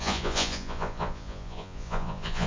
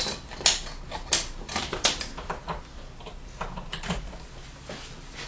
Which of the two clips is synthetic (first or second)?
first